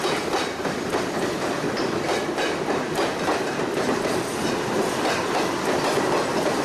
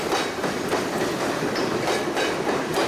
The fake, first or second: first